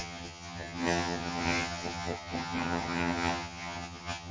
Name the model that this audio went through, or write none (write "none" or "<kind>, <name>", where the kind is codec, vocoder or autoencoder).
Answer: vocoder, HiFi-GAN